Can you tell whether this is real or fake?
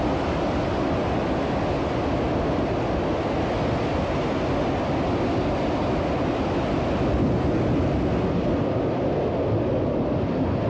real